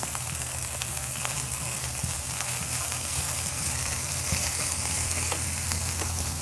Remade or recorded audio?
remade